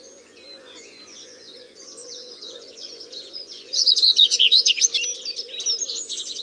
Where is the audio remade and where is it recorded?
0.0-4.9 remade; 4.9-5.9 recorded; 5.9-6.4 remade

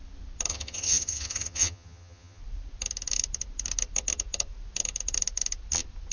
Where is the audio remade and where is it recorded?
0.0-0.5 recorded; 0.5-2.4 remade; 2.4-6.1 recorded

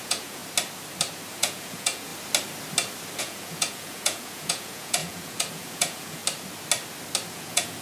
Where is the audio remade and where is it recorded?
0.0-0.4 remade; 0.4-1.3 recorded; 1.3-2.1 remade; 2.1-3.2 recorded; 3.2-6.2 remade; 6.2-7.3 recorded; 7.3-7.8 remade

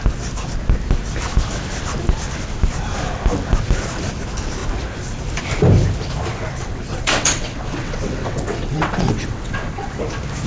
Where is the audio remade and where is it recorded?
0.0-6.3 recorded; 6.3-9.9 remade; 9.9-10.5 recorded